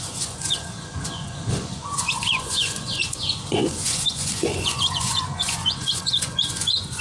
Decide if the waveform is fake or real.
fake